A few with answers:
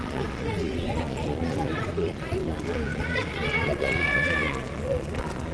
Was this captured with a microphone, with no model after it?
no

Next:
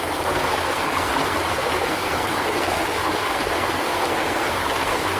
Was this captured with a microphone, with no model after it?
no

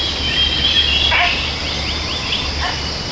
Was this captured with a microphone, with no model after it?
yes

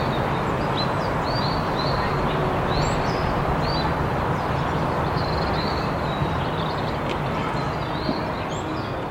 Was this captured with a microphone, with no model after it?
yes